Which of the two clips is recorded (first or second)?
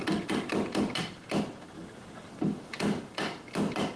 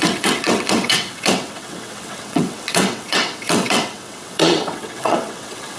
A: first